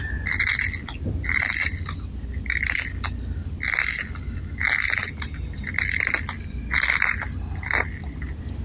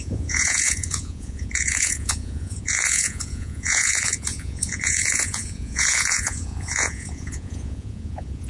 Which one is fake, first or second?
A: second